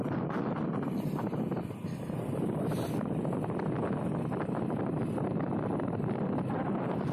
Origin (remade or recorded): remade